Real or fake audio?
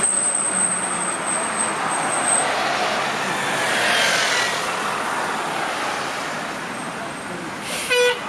real